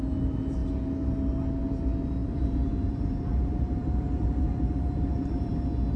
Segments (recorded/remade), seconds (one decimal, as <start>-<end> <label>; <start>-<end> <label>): 0.0-2.2 recorded; 2.2-5.5 remade; 5.5-6.0 recorded